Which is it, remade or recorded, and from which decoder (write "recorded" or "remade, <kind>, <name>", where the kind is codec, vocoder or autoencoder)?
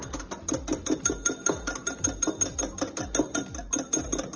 recorded